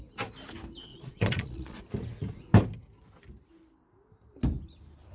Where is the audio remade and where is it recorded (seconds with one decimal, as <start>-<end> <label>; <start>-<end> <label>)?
0.0-0.9 recorded; 0.9-1.8 remade; 1.8-5.1 recorded